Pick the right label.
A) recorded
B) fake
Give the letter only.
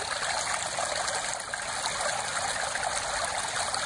A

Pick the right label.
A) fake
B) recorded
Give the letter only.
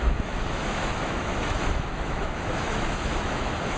A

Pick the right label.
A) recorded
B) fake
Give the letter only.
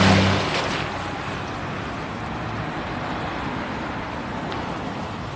A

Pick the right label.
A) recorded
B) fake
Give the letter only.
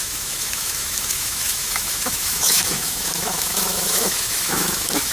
B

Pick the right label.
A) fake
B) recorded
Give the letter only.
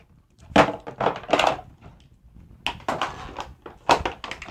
B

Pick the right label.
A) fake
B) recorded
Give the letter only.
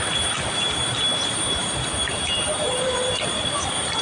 B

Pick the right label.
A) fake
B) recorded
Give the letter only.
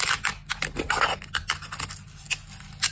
B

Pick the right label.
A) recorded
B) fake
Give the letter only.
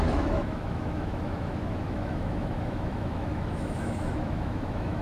B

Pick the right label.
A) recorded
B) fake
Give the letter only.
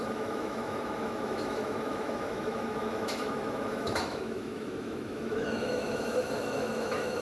B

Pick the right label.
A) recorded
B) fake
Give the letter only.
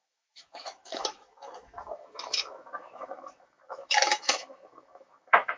B